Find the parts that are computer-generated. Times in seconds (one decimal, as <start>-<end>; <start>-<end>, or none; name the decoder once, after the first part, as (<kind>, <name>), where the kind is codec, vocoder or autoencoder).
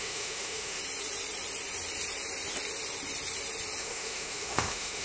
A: 0.0-0.8 (autoencoder, DAC-VAE); 3.8-5.0